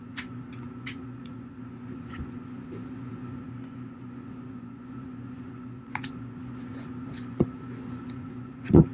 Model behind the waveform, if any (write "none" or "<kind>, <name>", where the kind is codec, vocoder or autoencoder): vocoder, Vocos